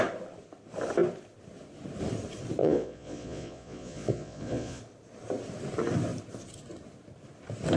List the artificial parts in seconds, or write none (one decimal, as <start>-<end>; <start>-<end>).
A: 2.6-4.8